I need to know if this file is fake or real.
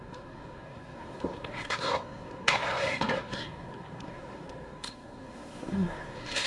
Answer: fake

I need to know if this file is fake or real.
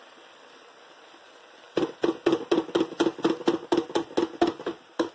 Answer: real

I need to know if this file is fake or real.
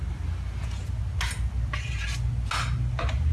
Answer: real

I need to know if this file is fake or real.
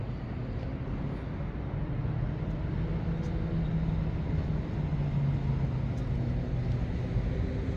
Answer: real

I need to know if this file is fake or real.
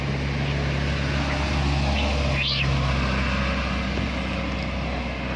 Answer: real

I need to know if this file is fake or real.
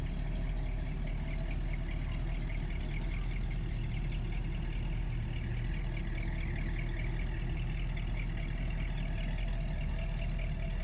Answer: real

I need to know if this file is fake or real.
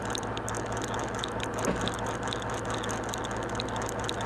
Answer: real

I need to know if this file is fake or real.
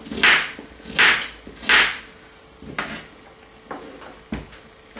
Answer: real